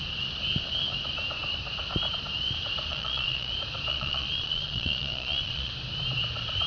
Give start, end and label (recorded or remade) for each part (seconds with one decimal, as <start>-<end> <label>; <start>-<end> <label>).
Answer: 0.0-2.9 recorded; 2.9-3.5 remade; 3.5-3.9 recorded; 3.9-5.7 remade; 5.7-6.7 recorded